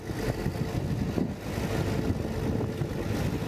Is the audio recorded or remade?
recorded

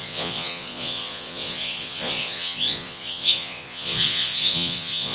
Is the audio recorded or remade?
remade